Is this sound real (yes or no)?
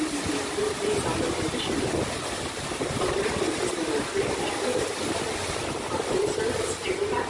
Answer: yes